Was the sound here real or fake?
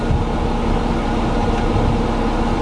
real